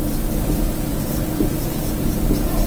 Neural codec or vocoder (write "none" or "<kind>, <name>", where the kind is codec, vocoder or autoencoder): vocoder, BigVGAN v2